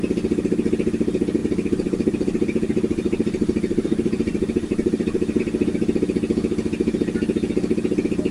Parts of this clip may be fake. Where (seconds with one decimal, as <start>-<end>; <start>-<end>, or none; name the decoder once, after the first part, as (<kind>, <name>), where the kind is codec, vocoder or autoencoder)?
1.4-5.4 (vocoder, BigVGAN v2)